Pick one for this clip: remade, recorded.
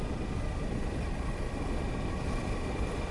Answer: recorded